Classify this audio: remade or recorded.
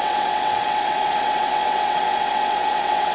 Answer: remade